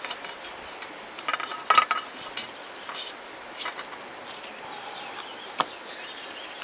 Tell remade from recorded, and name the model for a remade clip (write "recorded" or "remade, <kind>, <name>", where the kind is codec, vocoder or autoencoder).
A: recorded